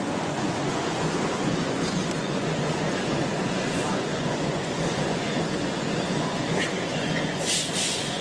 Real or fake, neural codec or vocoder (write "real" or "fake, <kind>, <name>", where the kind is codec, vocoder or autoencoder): fake, vocoder, Vocos